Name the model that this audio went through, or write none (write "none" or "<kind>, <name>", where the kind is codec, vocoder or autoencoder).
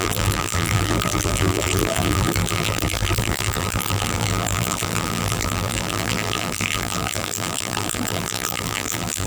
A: vocoder, BigVGAN v2